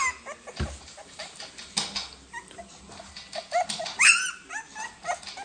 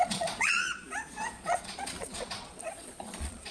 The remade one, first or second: second